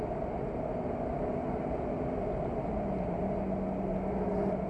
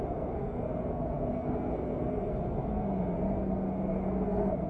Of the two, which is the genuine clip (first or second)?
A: first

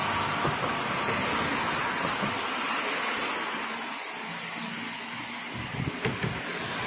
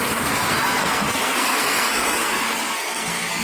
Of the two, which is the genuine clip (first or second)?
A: first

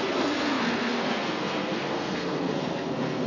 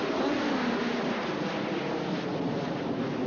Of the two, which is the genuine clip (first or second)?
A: second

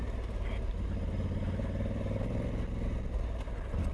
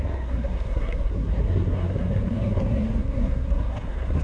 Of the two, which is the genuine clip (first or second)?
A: first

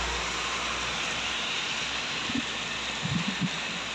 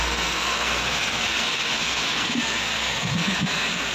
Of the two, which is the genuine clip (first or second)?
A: first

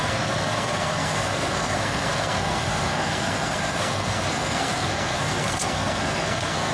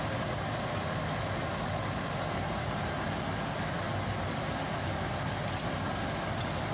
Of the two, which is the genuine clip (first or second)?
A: second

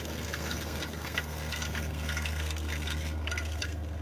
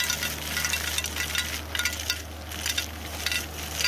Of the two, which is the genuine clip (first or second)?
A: second